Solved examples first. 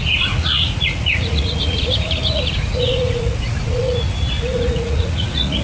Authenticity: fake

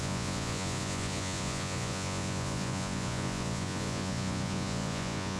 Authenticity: fake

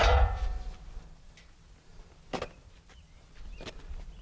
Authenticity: real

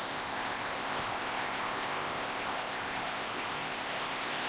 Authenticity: fake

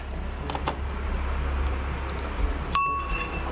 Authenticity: real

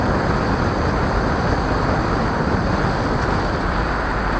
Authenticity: real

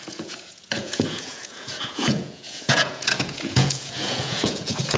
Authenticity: fake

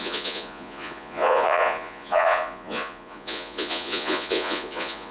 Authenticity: fake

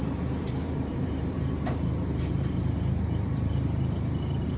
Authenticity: fake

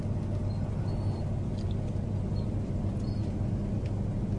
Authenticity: real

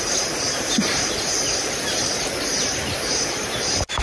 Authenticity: real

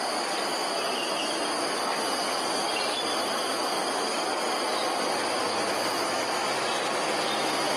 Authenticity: real